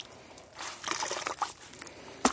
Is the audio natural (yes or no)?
yes